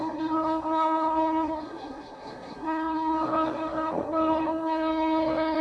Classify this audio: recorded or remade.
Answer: remade